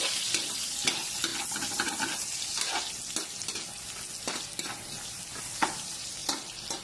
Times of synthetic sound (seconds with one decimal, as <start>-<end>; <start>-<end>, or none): 0.0-1.3; 5.4-6.8